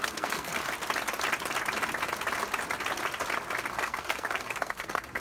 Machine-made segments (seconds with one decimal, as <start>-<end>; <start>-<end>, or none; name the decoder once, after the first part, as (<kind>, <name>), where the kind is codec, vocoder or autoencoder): 0.0-0.6 (codec, SNAC); 3.7-5.2